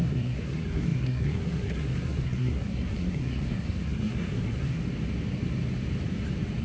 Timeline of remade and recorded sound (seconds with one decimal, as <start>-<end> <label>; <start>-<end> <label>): 0.0-4.8 remade; 4.8-6.6 recorded